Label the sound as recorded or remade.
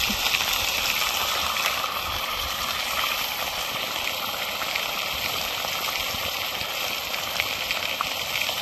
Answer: remade